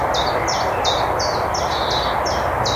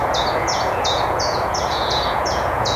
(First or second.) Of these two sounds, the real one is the first